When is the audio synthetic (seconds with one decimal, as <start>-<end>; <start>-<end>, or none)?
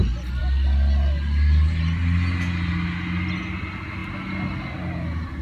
none